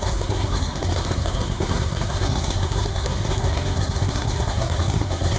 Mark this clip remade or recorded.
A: remade